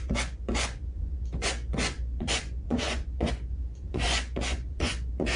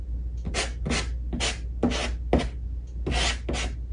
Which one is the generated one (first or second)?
first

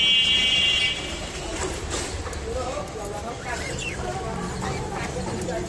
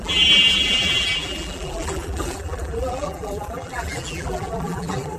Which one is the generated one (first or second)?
second